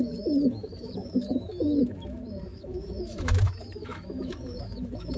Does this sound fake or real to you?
fake